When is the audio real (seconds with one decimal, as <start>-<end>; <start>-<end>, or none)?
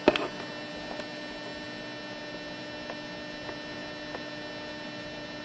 0.0-5.4